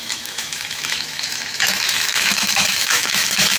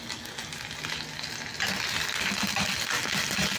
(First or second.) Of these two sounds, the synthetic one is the first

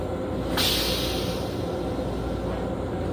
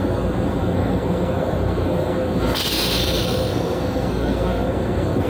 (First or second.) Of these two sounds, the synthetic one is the second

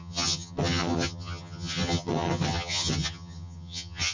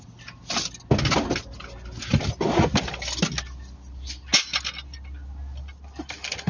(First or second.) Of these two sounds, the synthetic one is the first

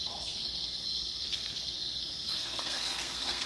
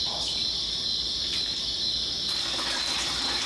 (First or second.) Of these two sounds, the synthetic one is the first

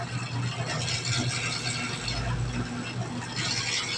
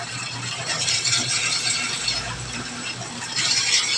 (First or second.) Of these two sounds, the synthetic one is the second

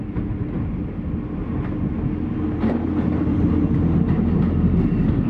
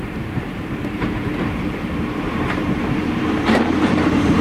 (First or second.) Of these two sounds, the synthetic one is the second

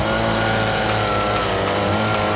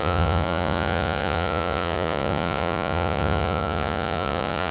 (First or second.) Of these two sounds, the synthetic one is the second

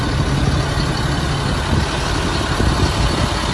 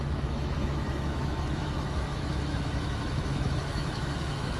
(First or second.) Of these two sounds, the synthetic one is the second